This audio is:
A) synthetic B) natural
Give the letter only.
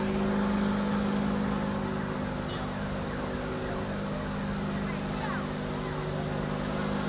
B